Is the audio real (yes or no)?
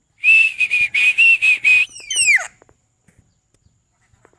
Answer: yes